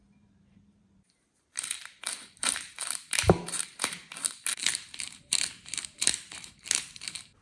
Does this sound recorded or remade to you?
remade